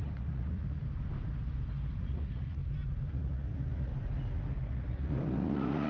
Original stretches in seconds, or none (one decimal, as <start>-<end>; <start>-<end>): 0.8-2.0; 2.6-3.1; 3.9-4.6